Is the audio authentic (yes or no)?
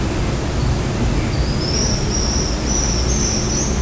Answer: yes